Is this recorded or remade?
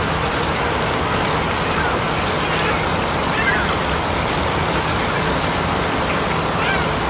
recorded